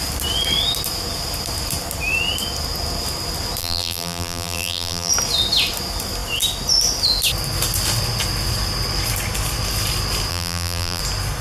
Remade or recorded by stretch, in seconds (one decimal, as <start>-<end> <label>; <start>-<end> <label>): 0.0-3.6 recorded; 3.6-5.1 remade; 5.1-10.3 recorded; 10.3-11.0 remade; 11.0-11.4 recorded